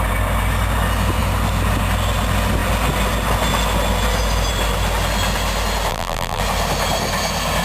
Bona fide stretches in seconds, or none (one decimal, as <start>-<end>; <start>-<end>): 0.0-5.9; 6.4-7.6